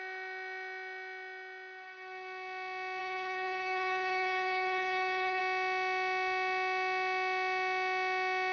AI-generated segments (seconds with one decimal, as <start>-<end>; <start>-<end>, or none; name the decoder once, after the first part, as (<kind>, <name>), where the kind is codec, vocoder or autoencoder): 3.0-5.4 (codec, HILCodec)